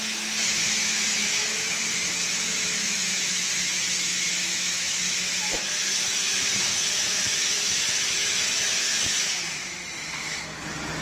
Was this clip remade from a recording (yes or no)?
yes